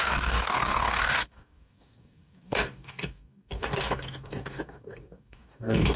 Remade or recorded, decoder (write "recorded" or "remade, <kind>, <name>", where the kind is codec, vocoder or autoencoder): remade, codec, DAC